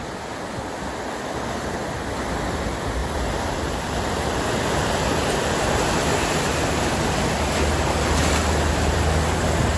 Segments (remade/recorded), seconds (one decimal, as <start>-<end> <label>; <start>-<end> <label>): 0.0-3.0 recorded; 3.0-6.0 remade; 6.0-9.8 recorded